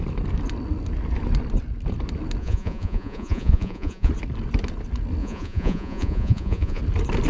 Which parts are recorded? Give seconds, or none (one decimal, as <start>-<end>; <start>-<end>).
0.0-2.4; 4.1-5.2; 6.8-7.3